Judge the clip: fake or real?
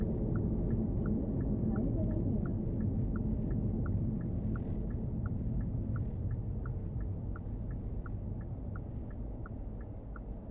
real